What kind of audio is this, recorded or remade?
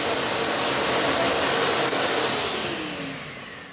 recorded